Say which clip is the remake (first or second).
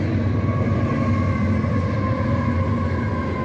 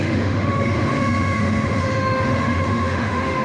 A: second